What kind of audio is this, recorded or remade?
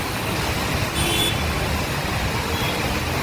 recorded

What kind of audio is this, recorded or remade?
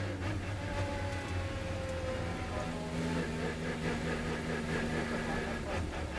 recorded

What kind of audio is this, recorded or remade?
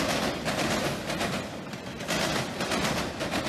recorded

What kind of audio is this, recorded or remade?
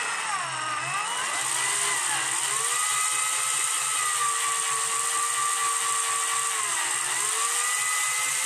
recorded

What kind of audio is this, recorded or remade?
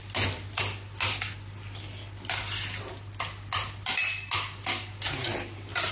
recorded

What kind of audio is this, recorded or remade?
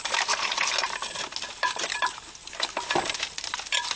recorded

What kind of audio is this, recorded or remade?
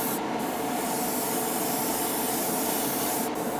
recorded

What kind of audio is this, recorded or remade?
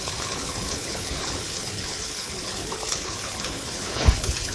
remade